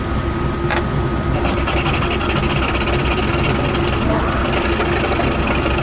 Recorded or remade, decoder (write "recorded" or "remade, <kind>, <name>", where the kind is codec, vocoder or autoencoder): recorded